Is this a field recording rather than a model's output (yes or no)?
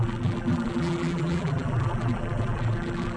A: no